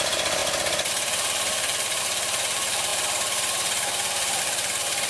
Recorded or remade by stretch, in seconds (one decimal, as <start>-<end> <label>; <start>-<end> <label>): 0.0-5.1 remade